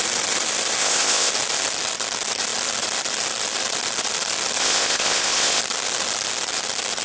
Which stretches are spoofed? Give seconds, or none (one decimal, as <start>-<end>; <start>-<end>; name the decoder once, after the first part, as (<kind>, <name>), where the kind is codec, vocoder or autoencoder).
0.8-1.3 (codec, ZipCodec); 4.6-5.6